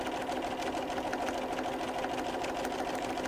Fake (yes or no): no